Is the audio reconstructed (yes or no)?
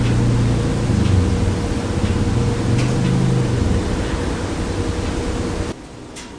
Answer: no